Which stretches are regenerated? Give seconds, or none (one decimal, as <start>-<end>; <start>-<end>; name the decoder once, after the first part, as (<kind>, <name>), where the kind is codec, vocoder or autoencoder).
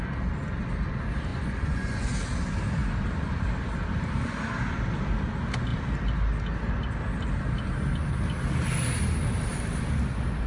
1.3-2.1 (vocoder, Vocos)